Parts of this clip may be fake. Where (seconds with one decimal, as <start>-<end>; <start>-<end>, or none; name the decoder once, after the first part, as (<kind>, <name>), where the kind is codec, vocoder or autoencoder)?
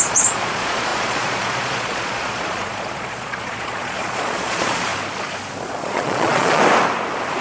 0.0-4.9 (vocoder, Vocos); 5.6-6.6